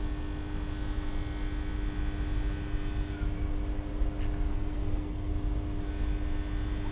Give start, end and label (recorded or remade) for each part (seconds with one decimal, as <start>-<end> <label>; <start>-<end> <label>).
0.0-4.5 recorded; 4.5-5.3 remade; 5.3-6.9 recorded